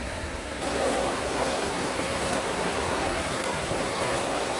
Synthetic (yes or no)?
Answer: yes